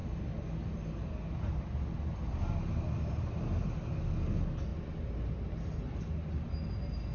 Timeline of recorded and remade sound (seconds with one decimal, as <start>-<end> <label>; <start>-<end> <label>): 0.0-7.1 recorded